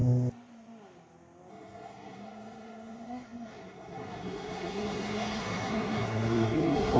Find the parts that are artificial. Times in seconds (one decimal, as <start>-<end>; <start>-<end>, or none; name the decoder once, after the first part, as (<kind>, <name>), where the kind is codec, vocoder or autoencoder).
1.5-7.0 (codec, SNAC)